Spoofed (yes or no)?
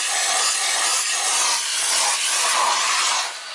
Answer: no